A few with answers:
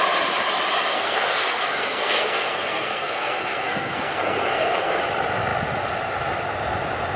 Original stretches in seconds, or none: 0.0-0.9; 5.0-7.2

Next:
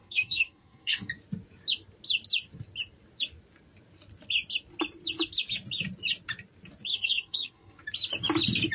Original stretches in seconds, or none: 1.1-6.9; 7.8-8.7

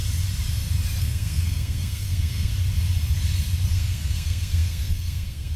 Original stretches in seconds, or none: 0.0-1.0; 2.5-3.7

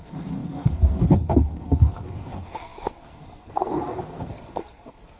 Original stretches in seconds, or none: none

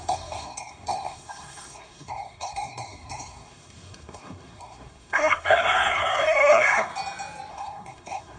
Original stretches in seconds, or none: 6.9-7.5

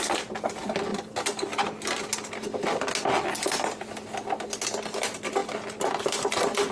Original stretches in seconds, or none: 0.0-6.7

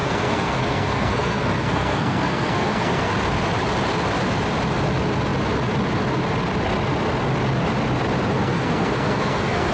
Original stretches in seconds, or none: 3.1-8.3

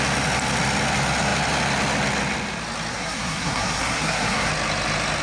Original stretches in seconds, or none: 0.0-2.9; 4.5-5.2